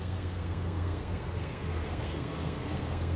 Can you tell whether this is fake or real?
fake